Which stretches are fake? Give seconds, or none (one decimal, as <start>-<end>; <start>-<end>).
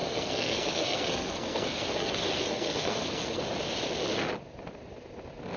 0.0-3.4